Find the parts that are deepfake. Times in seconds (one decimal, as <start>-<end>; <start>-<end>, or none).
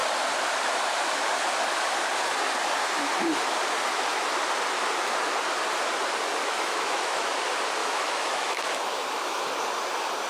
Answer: 6.4-7.3; 7.8-9.4